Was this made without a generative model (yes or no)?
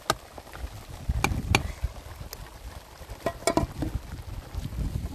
yes